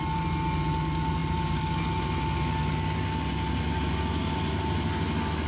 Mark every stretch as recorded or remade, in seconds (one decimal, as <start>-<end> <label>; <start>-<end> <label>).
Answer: 0.0-1.2 recorded; 1.2-1.7 remade; 1.7-5.5 recorded